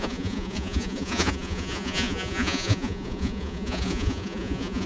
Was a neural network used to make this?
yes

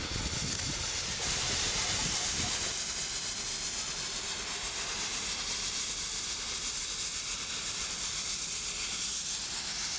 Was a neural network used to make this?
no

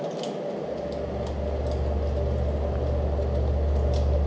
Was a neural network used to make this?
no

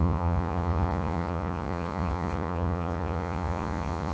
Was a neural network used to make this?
yes